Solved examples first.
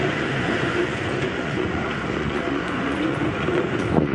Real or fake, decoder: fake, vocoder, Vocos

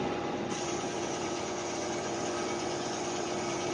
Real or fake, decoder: fake, vocoder, Vocos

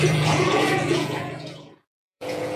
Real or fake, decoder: fake, vocoder, Vocos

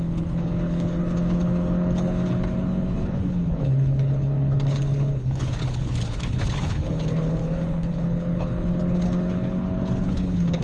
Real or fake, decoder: fake, codec, HILCodec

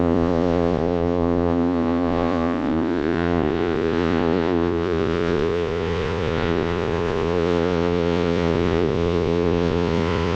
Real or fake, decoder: fake, vocoder, Vocos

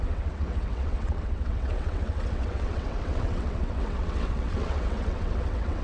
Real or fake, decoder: fake, vocoder, WaveNeXt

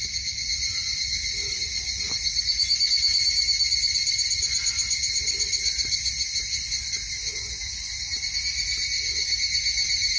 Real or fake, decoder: real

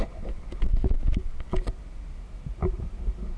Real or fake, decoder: real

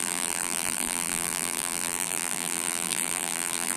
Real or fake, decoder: fake, vocoder, BigVGAN v2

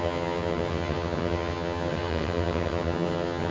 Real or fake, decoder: fake, vocoder, HiFi-GAN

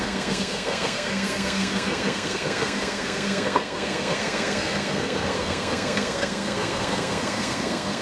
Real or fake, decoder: fake, codec, SNAC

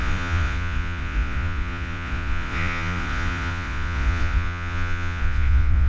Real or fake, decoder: fake, vocoder, Vocos